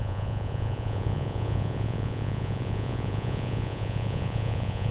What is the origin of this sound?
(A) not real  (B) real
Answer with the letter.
A